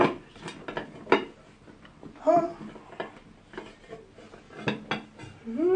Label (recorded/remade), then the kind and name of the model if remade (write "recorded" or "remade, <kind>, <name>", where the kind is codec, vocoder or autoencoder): recorded